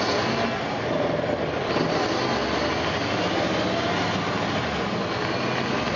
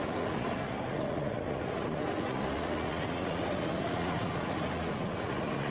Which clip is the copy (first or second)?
second